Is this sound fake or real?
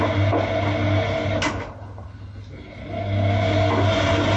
real